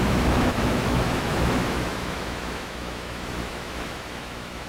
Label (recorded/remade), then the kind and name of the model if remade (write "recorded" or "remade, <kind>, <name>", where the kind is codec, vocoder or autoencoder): remade, autoencoder, DAC-VAE